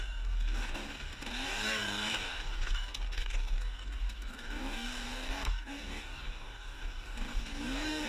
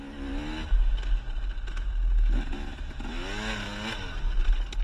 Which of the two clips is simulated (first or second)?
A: first